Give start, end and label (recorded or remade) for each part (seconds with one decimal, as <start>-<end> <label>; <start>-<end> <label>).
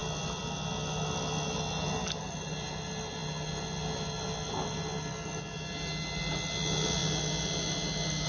0.0-7.0 recorded; 7.0-7.7 remade; 7.7-8.3 recorded